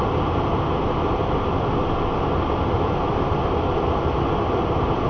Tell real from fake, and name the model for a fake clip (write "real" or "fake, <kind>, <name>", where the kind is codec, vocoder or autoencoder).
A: real